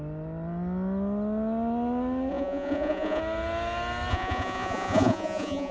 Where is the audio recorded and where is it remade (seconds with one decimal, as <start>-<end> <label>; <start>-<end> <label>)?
0.0-2.3 recorded; 2.3-3.2 remade; 3.2-4.1 recorded; 4.1-5.7 remade